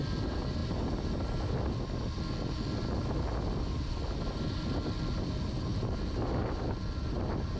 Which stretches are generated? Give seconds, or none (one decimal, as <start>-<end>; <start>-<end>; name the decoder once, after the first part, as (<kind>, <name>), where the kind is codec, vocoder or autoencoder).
none